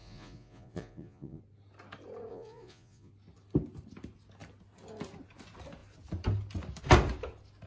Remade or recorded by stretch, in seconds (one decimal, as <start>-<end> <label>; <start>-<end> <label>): 0.0-1.4 remade; 1.4-2.3 recorded; 2.3-3.1 remade; 3.1-7.7 recorded